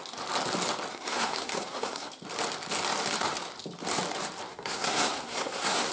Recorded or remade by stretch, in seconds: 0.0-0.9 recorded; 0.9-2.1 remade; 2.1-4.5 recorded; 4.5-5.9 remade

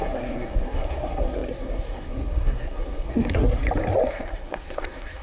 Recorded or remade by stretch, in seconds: 0.0-3.6 remade; 3.6-4.1 recorded; 4.1-5.2 remade